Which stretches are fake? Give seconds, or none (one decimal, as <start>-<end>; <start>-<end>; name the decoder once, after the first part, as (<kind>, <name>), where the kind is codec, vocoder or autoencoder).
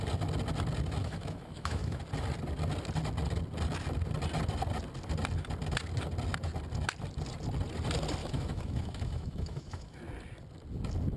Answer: 1.0-2.0 (autoencoder, DAC-VAE); 8.2-10.0